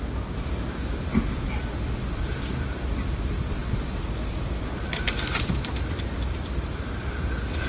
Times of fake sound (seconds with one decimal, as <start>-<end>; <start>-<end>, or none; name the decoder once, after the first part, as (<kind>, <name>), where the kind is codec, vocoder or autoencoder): 3.6-5.6 (vocoder, BigVGAN v2)